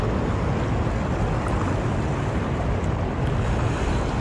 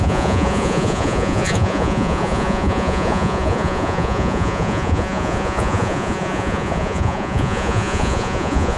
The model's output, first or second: second